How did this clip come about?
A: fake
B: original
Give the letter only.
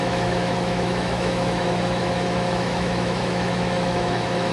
A